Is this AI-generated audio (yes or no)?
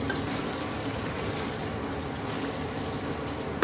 no